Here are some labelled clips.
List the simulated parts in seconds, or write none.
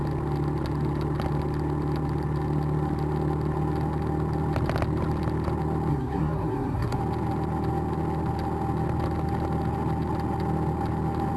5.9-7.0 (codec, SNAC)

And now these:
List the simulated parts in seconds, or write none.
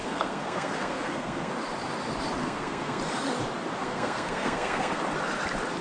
0.0-1.5 (codec, SNAC); 2.4-3.0; 3.8-5.0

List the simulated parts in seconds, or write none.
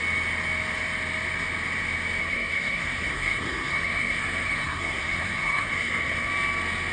2.2-6.3 (codec, SNAC)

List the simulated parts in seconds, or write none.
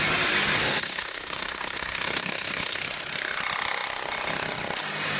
0.6-2.8 (codec, SNAC)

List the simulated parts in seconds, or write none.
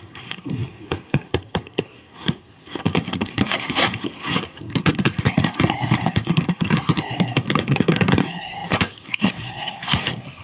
0.0-10.4 (codec, SNAC)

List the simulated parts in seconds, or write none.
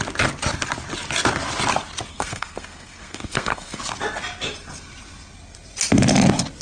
2.1-3.8 (codec, SNAC)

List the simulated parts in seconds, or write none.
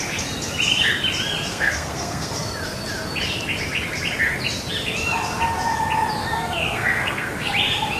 1.5-2.3 (codec, SNAC); 6.2-7.3